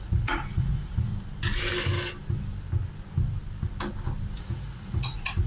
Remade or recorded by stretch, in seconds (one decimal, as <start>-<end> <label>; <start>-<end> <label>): 0.0-1.1 remade; 1.1-4.4 recorded; 4.4-5.5 remade